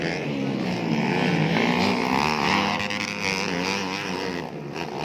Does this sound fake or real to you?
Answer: real